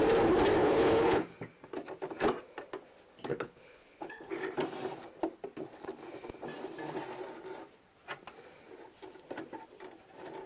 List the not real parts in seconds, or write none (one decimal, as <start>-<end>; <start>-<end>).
0.6-1.2; 3.3-4.3